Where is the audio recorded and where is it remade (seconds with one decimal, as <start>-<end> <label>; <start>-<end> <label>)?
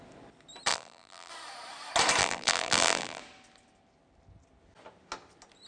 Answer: 0.0-0.7 recorded; 0.7-1.3 remade; 1.3-2.2 recorded; 2.2-3.2 remade; 3.2-5.7 recorded